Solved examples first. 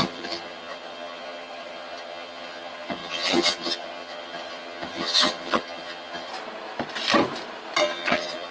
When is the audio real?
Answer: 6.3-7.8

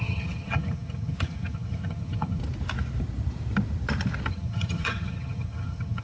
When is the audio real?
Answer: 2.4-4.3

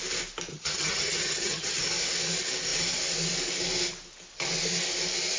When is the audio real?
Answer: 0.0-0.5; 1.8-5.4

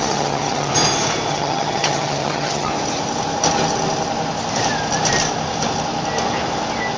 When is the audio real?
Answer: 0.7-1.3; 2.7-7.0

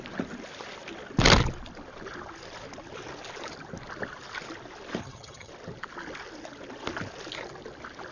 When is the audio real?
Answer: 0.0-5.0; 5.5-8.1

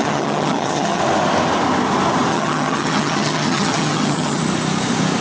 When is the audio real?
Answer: 1.0-2.3; 4.4-5.2

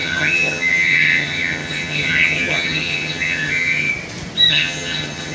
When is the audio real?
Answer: 3.9-4.5